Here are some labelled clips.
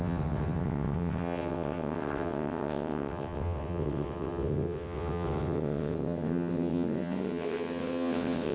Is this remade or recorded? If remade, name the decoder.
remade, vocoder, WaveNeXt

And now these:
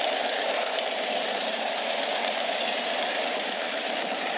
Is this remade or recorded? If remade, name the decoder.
remade, vocoder, BigVGAN v2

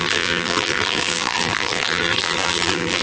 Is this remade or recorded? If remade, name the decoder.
remade, vocoder, BigVGAN v2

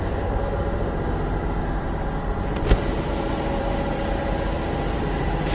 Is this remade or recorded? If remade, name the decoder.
remade, vocoder, BigVGAN v2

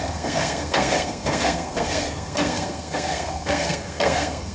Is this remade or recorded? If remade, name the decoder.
remade, codec, SNAC